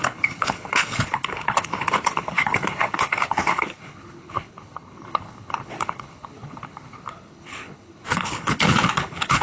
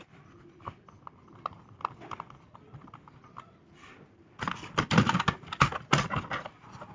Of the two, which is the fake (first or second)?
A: first